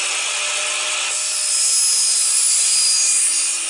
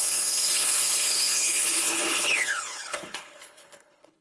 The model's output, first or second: second